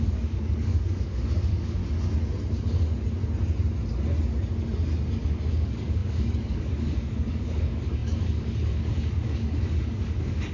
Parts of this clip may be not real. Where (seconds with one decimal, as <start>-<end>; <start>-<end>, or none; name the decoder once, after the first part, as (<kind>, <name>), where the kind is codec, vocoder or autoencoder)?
0.0-1.8 (codec, DAC); 5.5-10.5

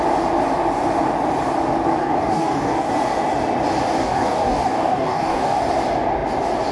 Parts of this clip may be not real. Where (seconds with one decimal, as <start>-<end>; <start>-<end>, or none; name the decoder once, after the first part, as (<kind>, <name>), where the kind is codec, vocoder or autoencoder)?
2.0-2.9 (codec, DAC); 4.0-5.6

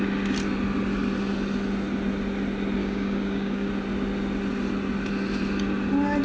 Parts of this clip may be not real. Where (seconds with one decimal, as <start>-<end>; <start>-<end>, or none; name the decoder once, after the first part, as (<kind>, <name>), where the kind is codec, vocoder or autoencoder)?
2.8-3.7 (codec, DAC)

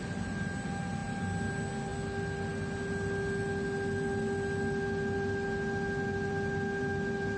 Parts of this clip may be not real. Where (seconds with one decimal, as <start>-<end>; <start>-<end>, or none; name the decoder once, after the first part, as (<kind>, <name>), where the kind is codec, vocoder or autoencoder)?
none

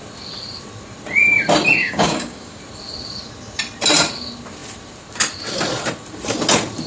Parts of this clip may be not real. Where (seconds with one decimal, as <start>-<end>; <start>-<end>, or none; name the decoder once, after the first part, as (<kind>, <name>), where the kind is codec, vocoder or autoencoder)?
1.8-2.6 (codec, DAC)

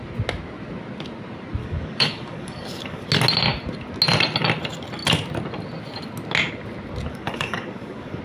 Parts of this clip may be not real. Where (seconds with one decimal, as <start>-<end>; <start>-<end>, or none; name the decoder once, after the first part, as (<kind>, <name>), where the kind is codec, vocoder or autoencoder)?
1.6-3.1 (codec, DAC); 7.1-8.2

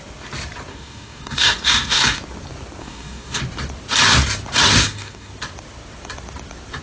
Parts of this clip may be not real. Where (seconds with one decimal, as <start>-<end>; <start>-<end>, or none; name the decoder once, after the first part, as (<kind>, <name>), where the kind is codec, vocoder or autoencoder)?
0.7-2.2 (codec, DAC); 2.8-3.4; 4.8-5.3